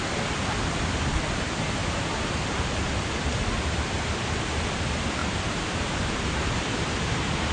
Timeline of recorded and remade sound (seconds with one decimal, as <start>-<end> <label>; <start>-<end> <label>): 0.0-1.8 recorded; 1.8-2.7 remade; 2.7-5.2 recorded; 5.2-7.5 remade